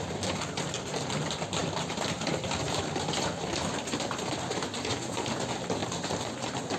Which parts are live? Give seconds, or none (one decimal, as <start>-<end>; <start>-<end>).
0.0-1.6; 4.2-5.8